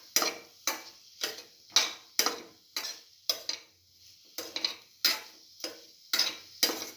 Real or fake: real